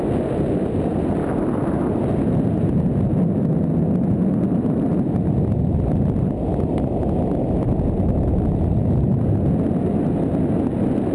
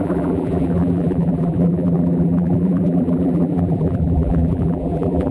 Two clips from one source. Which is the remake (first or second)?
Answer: second